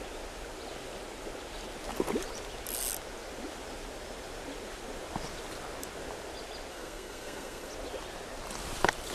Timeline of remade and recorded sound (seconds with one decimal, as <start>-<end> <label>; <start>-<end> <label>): 0.0-6.7 recorded; 6.7-7.7 remade; 7.7-9.1 recorded